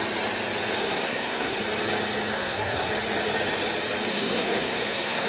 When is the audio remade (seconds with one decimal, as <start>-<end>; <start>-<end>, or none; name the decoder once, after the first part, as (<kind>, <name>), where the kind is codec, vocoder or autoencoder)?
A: 0.8-1.6 (codec, SNAC); 2.3-2.9; 4.1-5.3